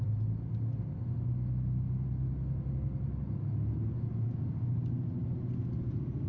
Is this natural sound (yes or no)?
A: yes